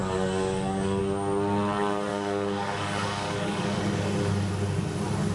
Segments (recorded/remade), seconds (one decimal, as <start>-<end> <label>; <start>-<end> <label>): 0.0-1.0 remade; 1.0-2.1 recorded; 2.1-3.8 remade; 3.8-5.3 recorded